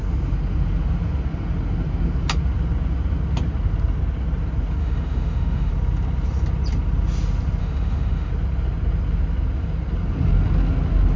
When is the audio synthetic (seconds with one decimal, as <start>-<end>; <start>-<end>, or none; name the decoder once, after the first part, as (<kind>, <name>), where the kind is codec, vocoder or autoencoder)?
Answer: 4.8-5.7 (autoencoder, DAC-VAE); 7.6-8.3